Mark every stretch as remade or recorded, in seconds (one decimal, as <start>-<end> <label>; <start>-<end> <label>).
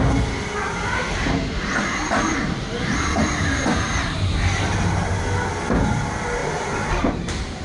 0.0-2.3 recorded; 2.3-4.3 remade; 4.3-6.4 recorded; 6.4-7.6 remade